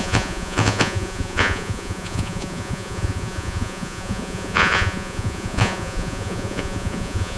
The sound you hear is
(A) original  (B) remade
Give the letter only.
B